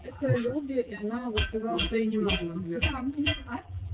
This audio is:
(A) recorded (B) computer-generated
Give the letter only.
B